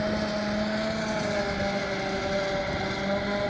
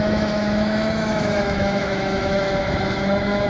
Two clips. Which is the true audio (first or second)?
first